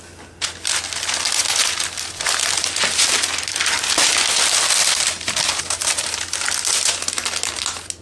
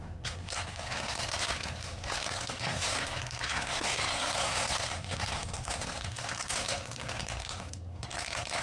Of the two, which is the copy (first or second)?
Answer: second